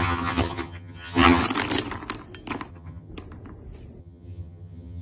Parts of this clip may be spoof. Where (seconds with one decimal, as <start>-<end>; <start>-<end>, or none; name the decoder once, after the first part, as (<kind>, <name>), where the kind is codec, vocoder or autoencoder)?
0.0-1.4 (vocoder, HiFi-GAN); 2.7-3.1; 4.0-5.0